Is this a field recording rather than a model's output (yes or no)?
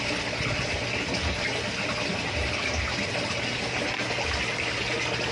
yes